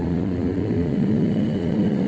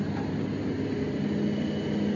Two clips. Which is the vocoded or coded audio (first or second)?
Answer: first